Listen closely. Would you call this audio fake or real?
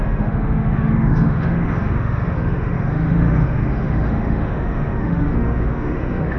fake